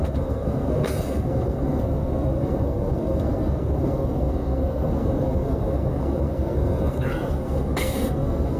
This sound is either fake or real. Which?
fake